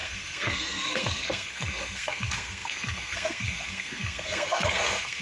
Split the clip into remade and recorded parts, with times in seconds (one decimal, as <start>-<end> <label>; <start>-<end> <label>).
0.0-5.2 remade